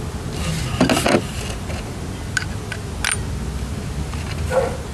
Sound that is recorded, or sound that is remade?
recorded